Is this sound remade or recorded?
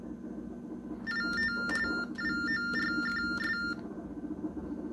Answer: recorded